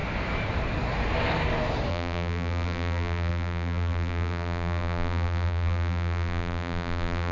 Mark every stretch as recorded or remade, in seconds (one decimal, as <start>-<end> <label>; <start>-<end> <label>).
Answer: 0.0-1.9 recorded; 1.9-7.3 remade